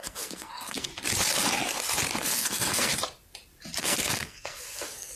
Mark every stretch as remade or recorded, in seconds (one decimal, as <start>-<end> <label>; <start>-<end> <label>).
0.0-0.9 remade; 0.9-2.2 recorded; 2.2-2.9 remade; 2.9-3.8 recorded; 3.8-5.2 remade